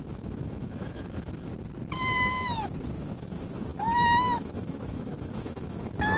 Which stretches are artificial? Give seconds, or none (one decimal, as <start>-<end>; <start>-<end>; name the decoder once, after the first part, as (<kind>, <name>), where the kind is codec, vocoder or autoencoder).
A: 0.0-1.5 (autoencoder, DAC-VAE); 3.0-6.2